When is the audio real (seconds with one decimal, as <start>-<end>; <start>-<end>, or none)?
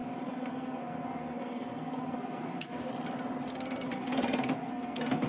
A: 2.9-3.5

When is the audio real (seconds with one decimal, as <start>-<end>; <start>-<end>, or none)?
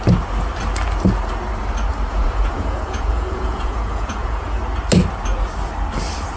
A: 0.0-2.1; 4.6-6.4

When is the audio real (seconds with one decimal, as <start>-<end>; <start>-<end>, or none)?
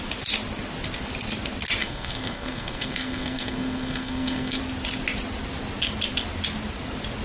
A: 0.0-1.8; 4.6-7.2